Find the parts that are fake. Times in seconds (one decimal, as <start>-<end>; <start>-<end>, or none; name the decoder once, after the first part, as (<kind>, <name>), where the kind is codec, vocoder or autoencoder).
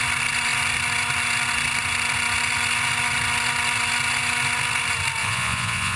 5.2-6.0 (vocoder, Vocos)